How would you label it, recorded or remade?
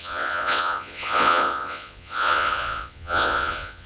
remade